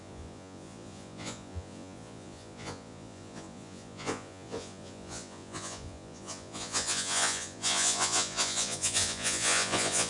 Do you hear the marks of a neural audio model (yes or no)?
yes